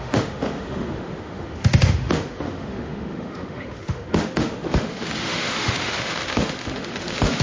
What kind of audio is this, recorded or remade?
remade